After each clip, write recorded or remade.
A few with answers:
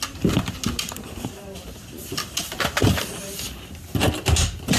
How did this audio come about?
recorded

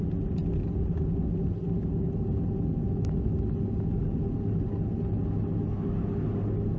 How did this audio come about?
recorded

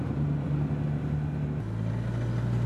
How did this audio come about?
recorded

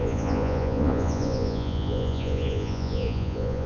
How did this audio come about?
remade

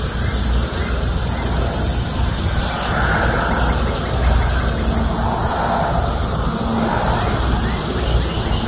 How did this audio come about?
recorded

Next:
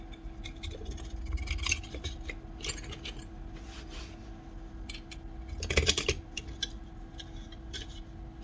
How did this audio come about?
recorded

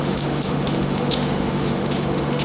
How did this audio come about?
remade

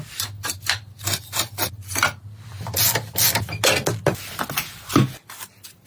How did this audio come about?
recorded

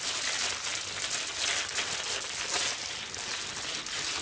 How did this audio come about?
recorded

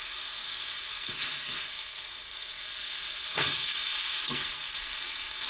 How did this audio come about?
remade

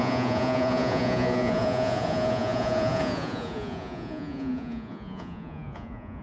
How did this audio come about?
remade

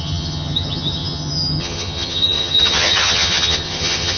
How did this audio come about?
remade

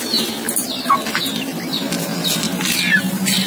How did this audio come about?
recorded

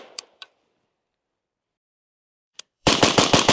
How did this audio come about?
remade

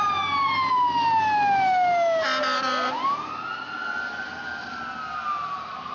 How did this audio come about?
recorded